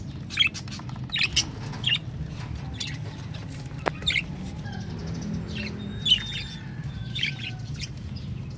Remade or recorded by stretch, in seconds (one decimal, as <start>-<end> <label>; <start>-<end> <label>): 0.0-6.8 recorded; 6.8-7.3 remade; 7.3-8.6 recorded